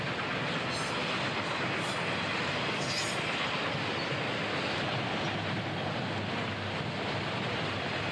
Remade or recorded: recorded